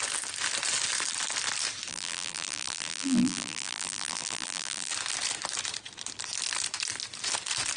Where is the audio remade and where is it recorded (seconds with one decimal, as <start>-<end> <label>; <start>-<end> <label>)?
0.0-1.9 recorded; 1.9-4.9 remade; 4.9-7.8 recorded